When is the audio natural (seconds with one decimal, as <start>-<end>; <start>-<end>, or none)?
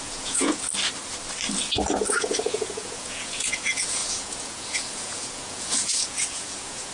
0.7-2.1